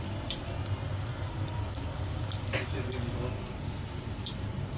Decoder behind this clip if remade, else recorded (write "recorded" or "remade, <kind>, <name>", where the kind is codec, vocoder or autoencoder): recorded